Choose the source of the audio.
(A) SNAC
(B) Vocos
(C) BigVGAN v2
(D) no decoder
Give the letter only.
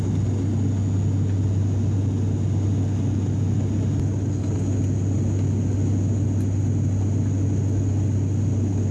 D